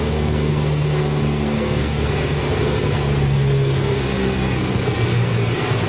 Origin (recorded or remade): remade